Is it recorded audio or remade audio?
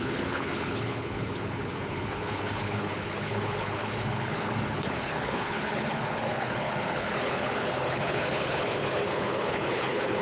remade